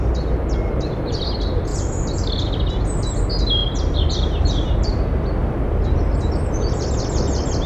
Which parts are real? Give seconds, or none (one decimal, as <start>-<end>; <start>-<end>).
0.0-1.7; 2.7-3.6; 4.9-7.7